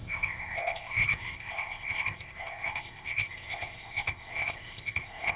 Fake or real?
fake